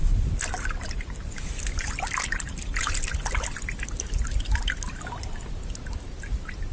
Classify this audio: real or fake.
real